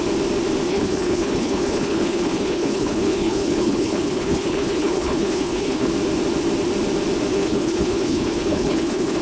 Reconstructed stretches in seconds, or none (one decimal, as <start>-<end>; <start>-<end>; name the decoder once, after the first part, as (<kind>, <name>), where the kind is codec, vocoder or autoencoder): 0.7-5.9 (codec, HILCodec); 7.4-9.2

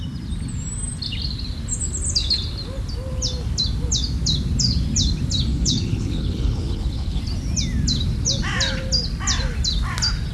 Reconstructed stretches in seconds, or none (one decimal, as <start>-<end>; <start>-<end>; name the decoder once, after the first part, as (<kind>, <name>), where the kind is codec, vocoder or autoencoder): 5.5-7.2 (codec, HILCodec)